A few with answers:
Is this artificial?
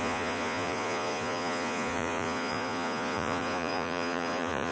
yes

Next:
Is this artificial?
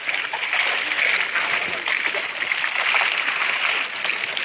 no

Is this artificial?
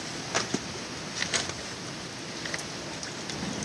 no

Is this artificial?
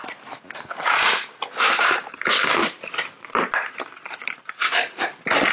no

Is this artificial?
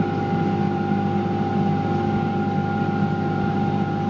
no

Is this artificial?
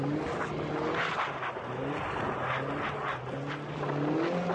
no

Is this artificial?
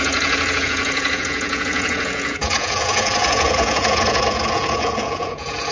yes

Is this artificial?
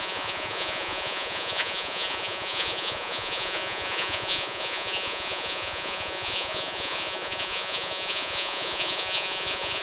yes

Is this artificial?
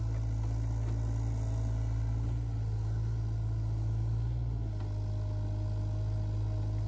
no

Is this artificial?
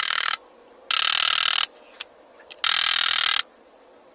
no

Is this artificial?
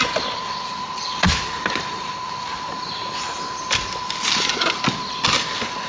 no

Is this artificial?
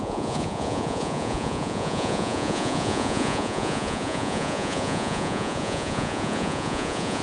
yes